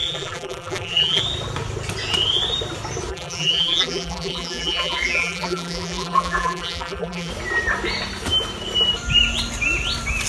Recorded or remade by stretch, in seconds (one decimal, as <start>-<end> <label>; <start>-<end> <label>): 0.0-1.2 remade; 1.2-3.1 recorded; 3.1-7.3 remade; 7.3-10.3 recorded